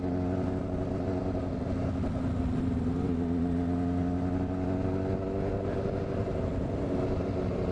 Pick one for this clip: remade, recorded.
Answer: recorded